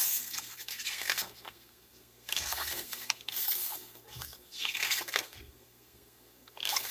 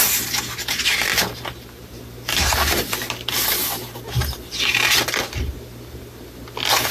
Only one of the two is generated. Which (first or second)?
first